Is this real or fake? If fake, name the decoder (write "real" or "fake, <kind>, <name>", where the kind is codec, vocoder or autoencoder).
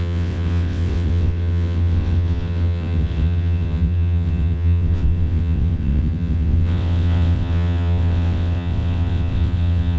fake, vocoder, WaveNeXt